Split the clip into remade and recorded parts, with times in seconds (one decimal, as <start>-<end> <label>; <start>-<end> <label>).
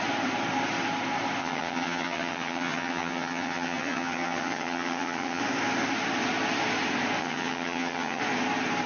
0.0-1.4 recorded; 1.4-5.4 remade; 5.4-7.2 recorded; 7.2-8.2 remade; 8.2-8.9 recorded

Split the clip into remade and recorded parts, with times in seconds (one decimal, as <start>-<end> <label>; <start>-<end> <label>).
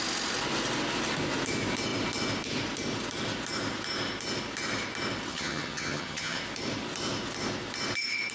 0.0-5.3 recorded; 5.3-6.4 remade; 6.4-8.3 recorded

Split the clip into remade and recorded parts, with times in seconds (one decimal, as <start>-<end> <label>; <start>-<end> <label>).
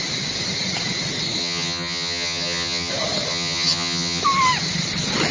0.0-1.4 recorded; 1.4-2.9 remade; 2.9-3.3 recorded; 3.3-4.2 remade; 4.2-5.3 recorded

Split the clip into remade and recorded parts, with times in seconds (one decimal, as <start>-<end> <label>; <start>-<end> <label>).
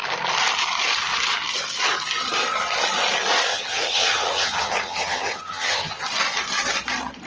0.0-3.5 recorded; 3.5-5.9 remade; 5.9-7.3 recorded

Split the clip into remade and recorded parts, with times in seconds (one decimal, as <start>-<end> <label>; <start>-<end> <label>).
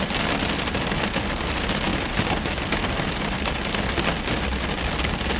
0.0-5.4 recorded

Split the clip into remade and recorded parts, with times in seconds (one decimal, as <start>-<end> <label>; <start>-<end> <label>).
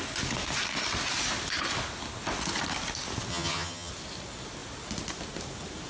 0.0-3.3 recorded; 3.3-3.9 remade; 3.9-5.9 recorded